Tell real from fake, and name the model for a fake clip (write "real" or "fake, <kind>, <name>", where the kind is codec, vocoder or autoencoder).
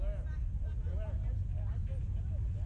real